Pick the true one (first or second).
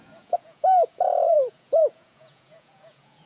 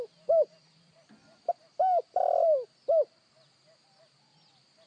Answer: second